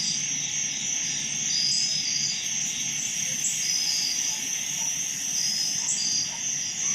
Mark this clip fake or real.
real